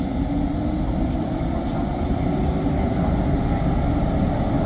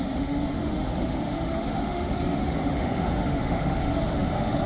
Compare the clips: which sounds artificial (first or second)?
second